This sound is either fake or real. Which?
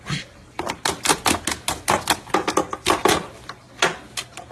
real